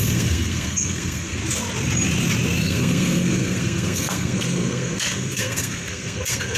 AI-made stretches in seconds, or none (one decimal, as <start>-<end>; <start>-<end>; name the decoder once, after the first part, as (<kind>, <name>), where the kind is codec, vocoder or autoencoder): 0.0-1.4 (codec, SNAC); 2.6-6.6